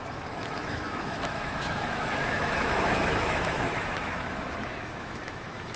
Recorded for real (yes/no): no